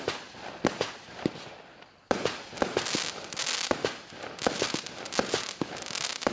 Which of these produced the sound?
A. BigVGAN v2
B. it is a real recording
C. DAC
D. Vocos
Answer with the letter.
B